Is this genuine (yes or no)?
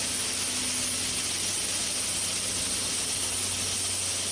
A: yes